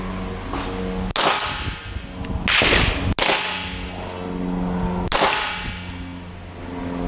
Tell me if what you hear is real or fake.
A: real